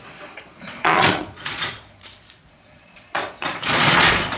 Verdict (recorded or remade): remade